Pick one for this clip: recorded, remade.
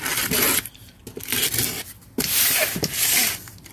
recorded